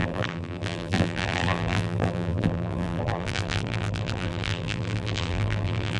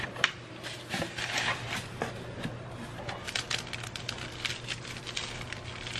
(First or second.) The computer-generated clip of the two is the first